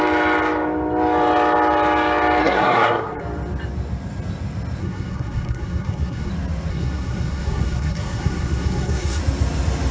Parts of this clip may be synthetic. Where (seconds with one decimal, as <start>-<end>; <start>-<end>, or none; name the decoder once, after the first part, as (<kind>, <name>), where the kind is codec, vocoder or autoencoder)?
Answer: 2.4-3.2 (codec, SNAC); 4.8-6.3; 6.7-9.2